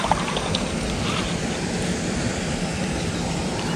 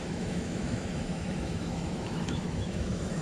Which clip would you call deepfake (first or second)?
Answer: second